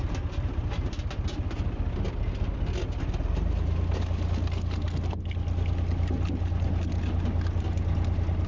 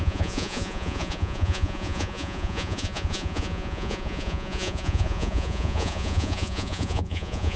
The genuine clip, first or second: first